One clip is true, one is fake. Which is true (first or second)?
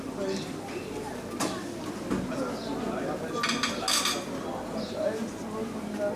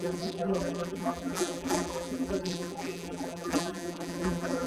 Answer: first